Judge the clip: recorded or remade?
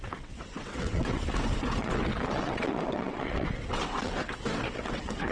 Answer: remade